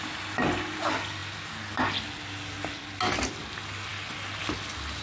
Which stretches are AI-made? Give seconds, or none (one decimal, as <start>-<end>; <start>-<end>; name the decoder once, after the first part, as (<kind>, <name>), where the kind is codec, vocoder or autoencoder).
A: none